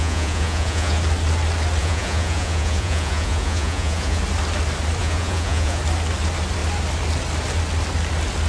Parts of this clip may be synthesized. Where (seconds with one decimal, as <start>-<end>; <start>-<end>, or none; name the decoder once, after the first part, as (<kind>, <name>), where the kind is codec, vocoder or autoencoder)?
0.0-1.0 (vocoder, Vocos); 1.8-4.2; 5.0-5.8